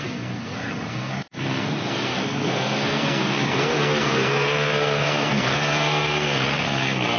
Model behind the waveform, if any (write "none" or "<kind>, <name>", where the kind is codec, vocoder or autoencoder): codec, SNAC